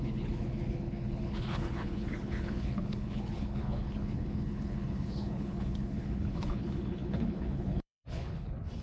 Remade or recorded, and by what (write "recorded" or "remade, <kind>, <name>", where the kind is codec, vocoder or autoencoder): remade, codec, HILCodec